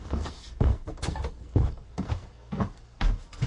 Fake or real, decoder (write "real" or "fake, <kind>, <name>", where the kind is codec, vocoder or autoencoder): fake, codec, SNAC